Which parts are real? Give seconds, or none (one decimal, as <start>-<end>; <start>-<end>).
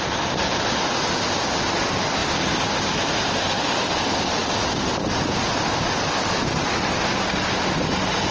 0.0-4.4; 5.1-8.3